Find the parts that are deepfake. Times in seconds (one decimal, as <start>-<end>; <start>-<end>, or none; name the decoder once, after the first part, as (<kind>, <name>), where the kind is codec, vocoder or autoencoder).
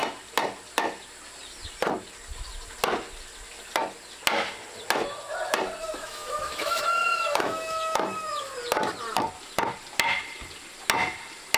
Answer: 5.8-8.5 (autoencoder, DAC-VAE)